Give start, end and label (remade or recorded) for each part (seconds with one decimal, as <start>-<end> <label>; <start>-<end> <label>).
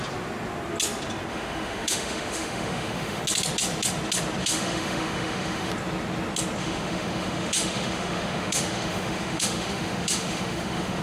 0.0-1.3 recorded; 1.3-3.2 remade; 3.2-4.4 recorded; 4.4-5.7 remade; 5.7-6.6 recorded; 6.6-11.0 remade